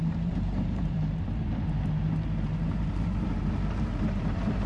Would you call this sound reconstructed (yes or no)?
yes